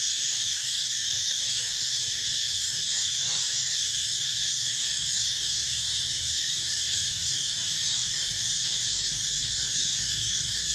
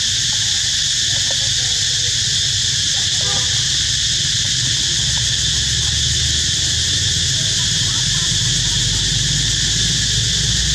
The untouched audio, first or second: second